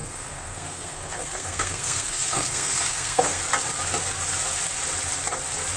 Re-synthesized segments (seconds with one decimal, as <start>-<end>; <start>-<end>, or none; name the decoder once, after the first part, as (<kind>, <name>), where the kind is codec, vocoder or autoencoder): 0.0-3.4 (codec, SNAC)